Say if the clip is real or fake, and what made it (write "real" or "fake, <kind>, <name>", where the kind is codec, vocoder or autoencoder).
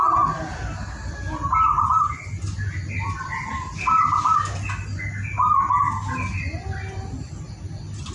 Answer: real